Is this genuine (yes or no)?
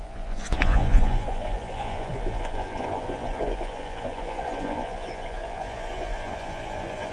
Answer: no